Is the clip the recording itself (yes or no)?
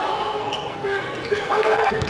no